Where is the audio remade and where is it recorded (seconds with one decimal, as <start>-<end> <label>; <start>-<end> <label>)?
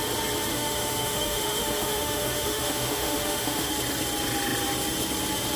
0.0-0.5 recorded; 0.5-3.7 remade; 3.7-5.6 recorded